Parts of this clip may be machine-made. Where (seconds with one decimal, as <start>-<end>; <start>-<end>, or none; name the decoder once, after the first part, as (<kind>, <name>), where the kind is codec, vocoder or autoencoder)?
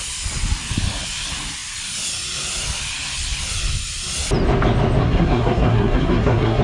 5.0-6.6 (codec, SNAC)